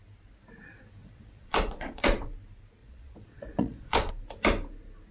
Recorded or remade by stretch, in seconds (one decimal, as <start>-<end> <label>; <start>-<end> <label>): 0.0-1.0 recorded; 1.0-2.3 remade; 2.3-2.8 recorded; 2.8-4.1 remade; 4.1-5.1 recorded